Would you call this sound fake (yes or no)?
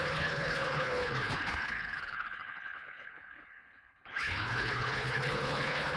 yes